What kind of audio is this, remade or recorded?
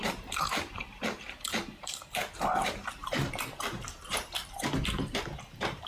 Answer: remade